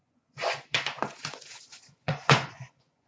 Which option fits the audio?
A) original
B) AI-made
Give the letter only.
B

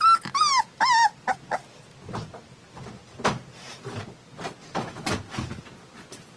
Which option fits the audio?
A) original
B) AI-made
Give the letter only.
A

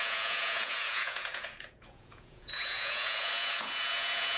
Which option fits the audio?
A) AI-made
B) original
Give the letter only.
A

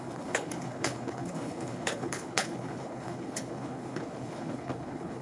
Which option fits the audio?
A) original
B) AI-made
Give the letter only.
B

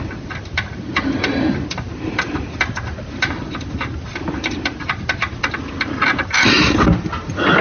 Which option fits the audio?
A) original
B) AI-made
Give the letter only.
A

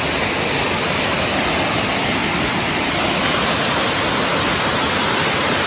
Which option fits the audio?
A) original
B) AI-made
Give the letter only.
A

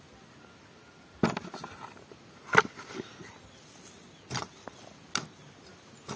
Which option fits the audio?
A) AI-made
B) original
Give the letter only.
B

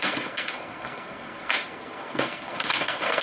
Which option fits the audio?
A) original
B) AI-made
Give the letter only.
B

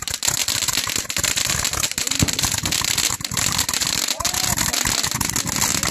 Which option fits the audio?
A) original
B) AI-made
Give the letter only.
A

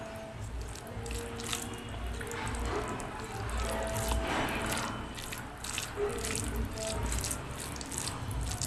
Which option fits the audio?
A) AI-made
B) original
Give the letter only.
B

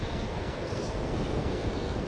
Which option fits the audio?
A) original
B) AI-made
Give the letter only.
B